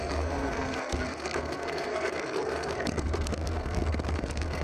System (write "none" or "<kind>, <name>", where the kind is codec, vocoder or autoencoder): codec, SNAC